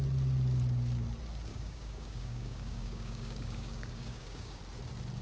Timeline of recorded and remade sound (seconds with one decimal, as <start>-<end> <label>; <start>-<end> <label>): 0.0-1.5 recorded; 1.5-4.6 remade; 4.6-5.2 recorded

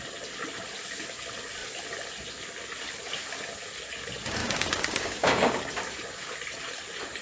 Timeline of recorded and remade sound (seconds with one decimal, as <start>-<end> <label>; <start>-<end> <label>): 0.0-4.4 recorded; 4.4-5.6 remade; 5.6-7.2 recorded

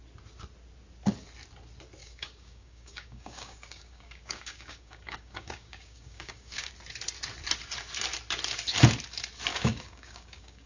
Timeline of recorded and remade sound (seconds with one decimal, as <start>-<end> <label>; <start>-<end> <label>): 0.0-2.0 recorded; 2.0-6.7 remade; 6.7-9.5 recorded; 9.5-10.7 remade

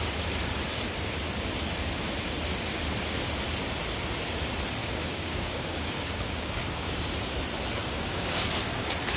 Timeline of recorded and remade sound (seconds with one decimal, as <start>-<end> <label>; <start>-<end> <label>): 0.0-4.8 recorded; 4.8-7.1 remade; 7.1-7.8 recorded; 7.8-8.4 remade; 8.4-9.2 recorded

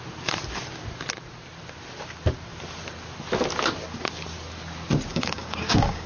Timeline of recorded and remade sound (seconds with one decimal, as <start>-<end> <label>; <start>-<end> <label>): 0.0-5.1 recorded; 5.1-6.1 remade

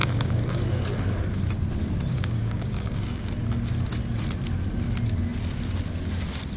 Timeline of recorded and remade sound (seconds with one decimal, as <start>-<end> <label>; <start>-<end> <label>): 0.0-0.6 remade; 0.6-2.1 recorded; 2.1-3.3 remade; 3.3-6.6 recorded